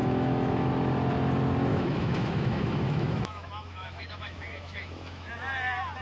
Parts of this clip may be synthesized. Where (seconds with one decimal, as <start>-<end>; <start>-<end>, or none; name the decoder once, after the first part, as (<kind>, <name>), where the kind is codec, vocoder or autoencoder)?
0.0-0.7 (autoencoder, DAC-VAE); 1.7-5.3